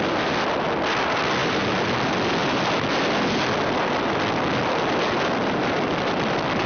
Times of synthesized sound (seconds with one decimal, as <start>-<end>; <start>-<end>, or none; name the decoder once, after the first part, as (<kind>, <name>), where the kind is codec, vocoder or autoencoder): none

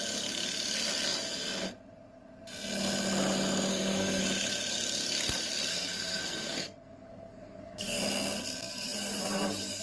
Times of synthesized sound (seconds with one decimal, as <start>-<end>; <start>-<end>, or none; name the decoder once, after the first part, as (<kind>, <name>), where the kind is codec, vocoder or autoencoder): 3.7-4.2 (codec, SNAC); 5.7-8.0

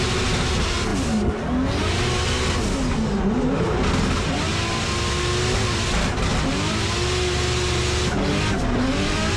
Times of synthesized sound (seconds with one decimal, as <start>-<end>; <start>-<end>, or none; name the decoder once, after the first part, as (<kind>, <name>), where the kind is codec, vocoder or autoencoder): none

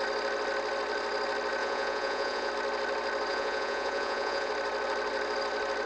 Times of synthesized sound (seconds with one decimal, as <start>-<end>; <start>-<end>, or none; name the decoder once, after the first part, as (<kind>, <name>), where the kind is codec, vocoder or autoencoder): 1.6-2.5 (vocoder, Vocos); 3.3-4.5

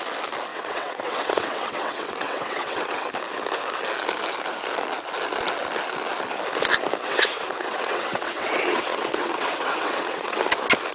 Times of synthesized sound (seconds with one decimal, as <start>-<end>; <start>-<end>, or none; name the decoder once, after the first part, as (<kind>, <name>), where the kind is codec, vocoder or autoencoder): 0.5-3.0 (vocoder, WaveNeXt); 7.0-10.4

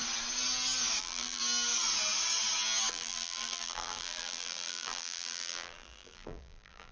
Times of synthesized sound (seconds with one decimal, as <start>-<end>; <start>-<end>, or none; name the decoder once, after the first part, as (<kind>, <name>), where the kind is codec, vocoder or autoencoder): 1.0-1.4 (vocoder, BigVGAN v2); 2.9-6.9

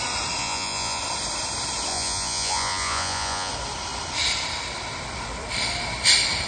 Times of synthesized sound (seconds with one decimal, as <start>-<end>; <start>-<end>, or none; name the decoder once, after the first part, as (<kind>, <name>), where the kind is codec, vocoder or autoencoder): 0.4-1.0 (vocoder, Vocos); 1.9-3.5

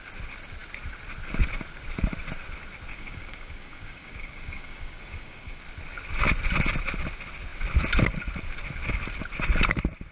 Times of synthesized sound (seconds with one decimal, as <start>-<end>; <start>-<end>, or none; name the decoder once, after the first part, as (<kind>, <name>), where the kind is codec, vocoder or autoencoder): 2.9-5.6 (codec, DAC)